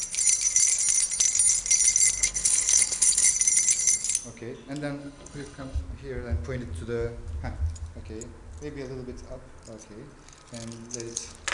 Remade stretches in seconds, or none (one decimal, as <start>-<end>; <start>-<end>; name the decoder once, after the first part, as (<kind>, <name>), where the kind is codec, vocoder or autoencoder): 2.2-3.3 (codec, HILCodec); 5.0-5.8